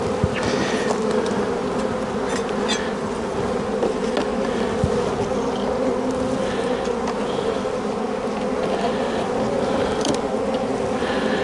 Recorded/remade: recorded